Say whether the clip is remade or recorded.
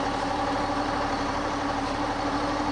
remade